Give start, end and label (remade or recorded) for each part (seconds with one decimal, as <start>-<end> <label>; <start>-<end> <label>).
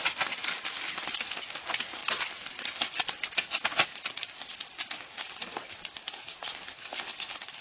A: 0.0-7.6 recorded